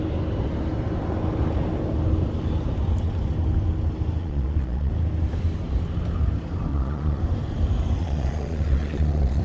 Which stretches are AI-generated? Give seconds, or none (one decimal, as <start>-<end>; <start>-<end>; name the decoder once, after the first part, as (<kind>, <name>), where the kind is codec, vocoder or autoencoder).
4.2-4.9 (vocoder, Vocos); 6.7-7.2; 8.0-9.4